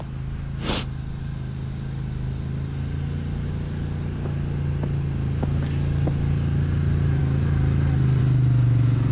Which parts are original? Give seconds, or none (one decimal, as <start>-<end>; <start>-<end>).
0.0-9.1